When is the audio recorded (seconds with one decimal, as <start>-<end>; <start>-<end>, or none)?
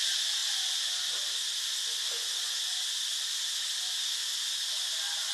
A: 0.0-5.3